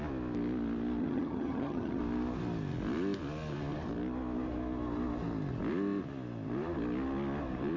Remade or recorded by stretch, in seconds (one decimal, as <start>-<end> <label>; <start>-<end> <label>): 0.0-1.0 recorded; 1.0-2.0 remade; 2.0-7.8 recorded

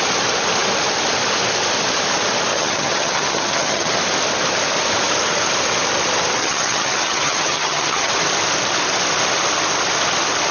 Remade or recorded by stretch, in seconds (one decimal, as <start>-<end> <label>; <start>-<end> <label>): 0.0-2.5 recorded; 2.5-3.9 remade; 3.9-6.4 recorded; 6.4-8.1 remade; 8.1-10.5 recorded

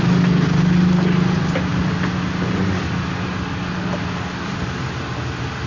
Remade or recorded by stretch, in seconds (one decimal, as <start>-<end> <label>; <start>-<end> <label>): 0.0-5.7 recorded

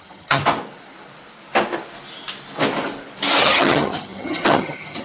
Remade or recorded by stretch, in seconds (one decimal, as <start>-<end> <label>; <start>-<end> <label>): 0.0-0.4 remade; 0.4-3.4 recorded; 3.4-5.0 remade

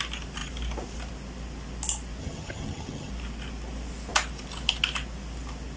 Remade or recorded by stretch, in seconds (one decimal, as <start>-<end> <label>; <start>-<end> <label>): 0.0-2.2 recorded; 2.2-3.1 remade; 3.1-5.8 recorded

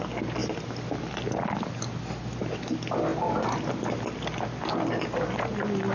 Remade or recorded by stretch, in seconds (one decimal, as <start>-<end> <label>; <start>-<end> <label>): 0.0-5.9 recorded

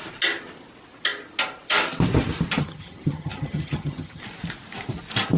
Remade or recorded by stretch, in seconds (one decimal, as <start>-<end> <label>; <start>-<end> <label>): 0.0-2.6 recorded; 2.6-4.2 remade; 4.2-5.4 recorded